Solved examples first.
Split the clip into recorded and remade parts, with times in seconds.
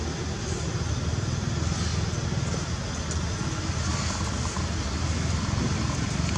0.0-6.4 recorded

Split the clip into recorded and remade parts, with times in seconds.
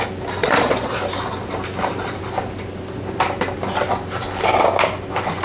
0.0-0.4 recorded; 0.4-1.0 remade; 1.0-5.4 recorded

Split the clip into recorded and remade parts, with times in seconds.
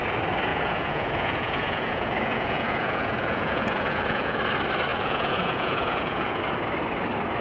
0.0-0.5 recorded; 0.5-4.4 remade; 4.4-4.9 recorded; 4.9-6.4 remade; 6.4-7.4 recorded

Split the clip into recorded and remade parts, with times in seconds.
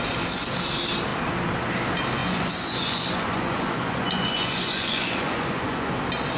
0.0-2.2 recorded; 2.2-6.0 remade; 6.0-6.4 recorded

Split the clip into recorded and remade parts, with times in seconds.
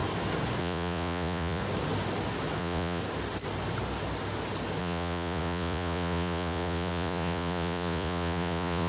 0.0-0.6 recorded; 0.6-1.6 remade; 1.6-2.6 recorded; 2.6-3.0 remade; 3.0-4.8 recorded; 4.8-8.9 remade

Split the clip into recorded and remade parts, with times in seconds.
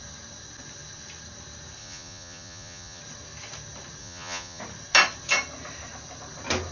0.0-1.8 recorded; 1.8-3.0 remade; 3.0-4.0 recorded; 4.0-4.6 remade; 4.6-6.7 recorded